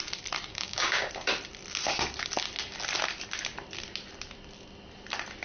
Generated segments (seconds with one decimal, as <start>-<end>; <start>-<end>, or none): 0.5-1.1